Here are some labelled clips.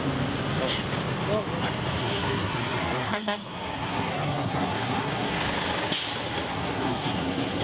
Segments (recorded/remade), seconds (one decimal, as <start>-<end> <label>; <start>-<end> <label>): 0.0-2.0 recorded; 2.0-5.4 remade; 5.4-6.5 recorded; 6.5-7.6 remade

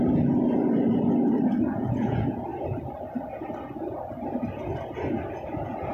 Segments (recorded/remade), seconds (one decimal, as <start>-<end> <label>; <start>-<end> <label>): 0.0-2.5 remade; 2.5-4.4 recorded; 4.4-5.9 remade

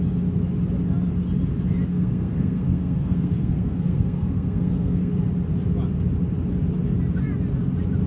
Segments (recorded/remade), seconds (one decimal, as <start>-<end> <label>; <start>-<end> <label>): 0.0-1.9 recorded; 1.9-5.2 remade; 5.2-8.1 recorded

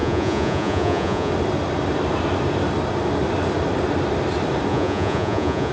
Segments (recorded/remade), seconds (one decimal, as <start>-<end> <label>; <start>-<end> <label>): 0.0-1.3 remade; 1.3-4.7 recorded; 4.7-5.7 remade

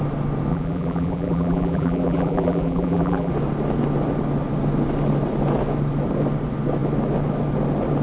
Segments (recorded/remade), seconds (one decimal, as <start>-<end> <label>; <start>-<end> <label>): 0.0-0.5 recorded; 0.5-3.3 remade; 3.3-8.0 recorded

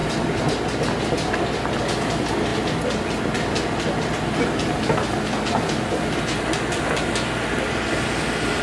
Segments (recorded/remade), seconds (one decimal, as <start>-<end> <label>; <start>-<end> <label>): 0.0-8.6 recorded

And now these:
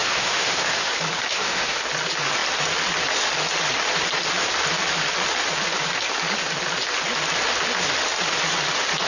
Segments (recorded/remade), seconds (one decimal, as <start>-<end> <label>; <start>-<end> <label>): 0.0-0.9 remade; 0.9-1.3 recorded; 1.3-1.8 remade; 1.8-9.1 recorded

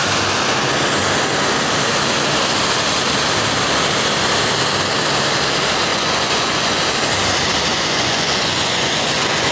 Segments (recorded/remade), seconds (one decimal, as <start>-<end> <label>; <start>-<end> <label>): 0.0-5.9 recorded; 5.9-6.8 remade; 6.8-7.7 recorded; 7.7-9.5 remade